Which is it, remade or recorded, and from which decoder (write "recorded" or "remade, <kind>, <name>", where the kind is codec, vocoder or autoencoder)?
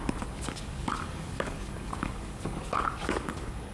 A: remade, codec, DAC